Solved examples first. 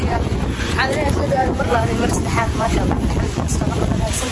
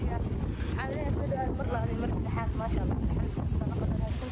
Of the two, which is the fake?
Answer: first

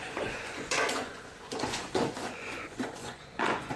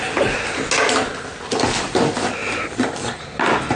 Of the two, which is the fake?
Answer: first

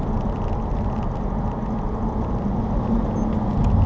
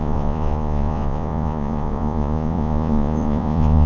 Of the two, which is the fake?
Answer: second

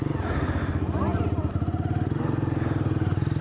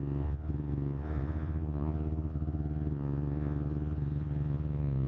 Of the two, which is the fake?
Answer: second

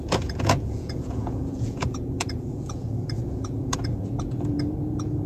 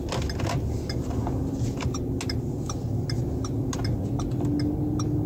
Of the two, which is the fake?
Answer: first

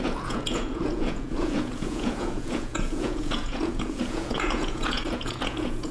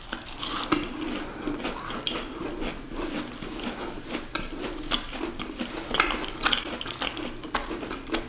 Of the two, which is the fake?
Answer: first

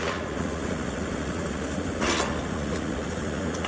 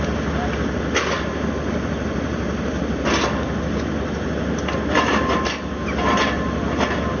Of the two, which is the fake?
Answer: first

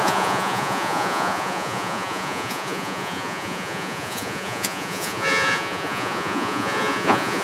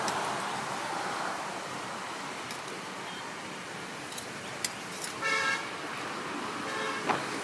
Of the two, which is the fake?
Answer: first